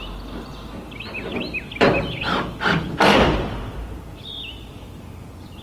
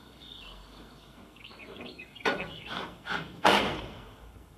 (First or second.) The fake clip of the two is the second